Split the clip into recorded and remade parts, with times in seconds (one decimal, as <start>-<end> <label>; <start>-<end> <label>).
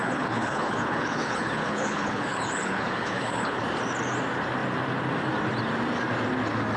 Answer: 0.0-3.6 remade; 3.6-6.8 recorded